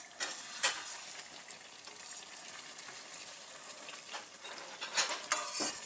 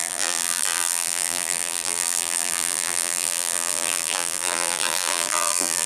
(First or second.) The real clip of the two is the first